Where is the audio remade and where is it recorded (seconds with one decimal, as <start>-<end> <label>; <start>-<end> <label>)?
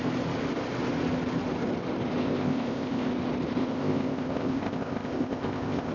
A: 0.0-2.2 recorded; 2.2-3.1 remade; 3.1-3.6 recorded; 3.6-5.9 remade